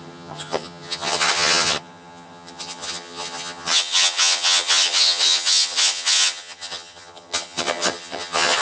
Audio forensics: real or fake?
fake